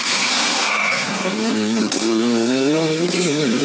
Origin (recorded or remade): remade